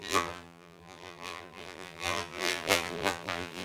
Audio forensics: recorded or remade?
remade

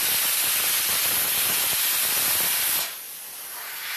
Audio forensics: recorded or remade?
recorded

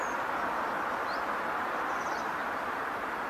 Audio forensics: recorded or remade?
remade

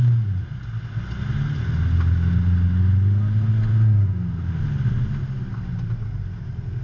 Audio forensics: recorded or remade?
recorded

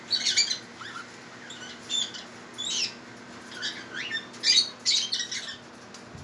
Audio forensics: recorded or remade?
recorded